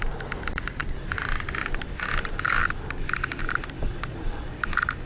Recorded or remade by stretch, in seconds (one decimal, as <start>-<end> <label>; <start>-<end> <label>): 0.0-5.1 recorded